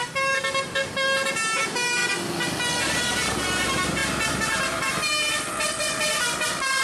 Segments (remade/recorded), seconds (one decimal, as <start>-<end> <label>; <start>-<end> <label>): 0.0-2.0 remade; 2.0-2.9 recorded; 2.9-6.8 remade